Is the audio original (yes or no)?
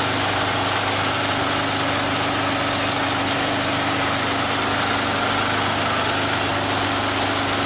yes